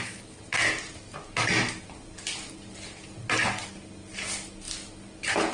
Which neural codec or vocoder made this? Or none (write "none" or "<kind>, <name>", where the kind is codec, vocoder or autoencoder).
none